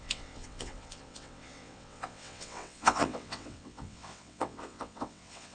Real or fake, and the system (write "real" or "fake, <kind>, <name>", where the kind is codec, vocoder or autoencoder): fake, vocoder, WaveNeXt